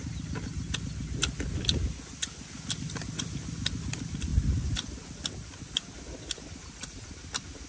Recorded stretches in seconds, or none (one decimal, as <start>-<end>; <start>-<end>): 0.0-7.7